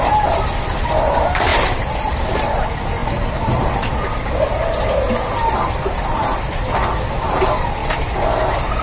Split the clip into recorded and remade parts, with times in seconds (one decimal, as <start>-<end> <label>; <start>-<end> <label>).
0.0-8.8 recorded